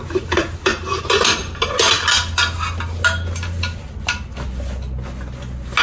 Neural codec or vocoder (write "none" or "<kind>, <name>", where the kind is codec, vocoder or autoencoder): none